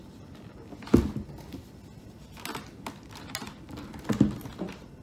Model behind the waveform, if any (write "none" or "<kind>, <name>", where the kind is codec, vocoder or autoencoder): none